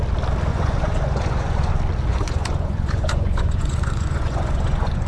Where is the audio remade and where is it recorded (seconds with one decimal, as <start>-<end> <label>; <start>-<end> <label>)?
0.0-0.5 recorded; 0.5-1.7 remade; 1.7-2.1 recorded; 2.1-5.1 remade